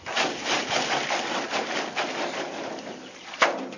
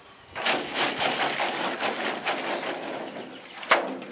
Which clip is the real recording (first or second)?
second